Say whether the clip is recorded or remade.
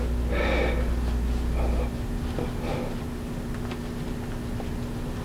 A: recorded